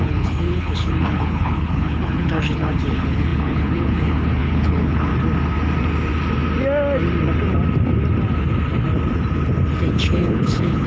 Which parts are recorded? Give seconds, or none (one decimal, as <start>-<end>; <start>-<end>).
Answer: 5.1-9.9